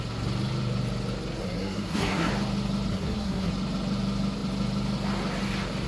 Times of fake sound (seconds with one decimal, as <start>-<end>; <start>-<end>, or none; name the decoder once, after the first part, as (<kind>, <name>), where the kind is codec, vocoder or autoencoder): 1.4-2.3 (codec, SNAC); 2.9-3.5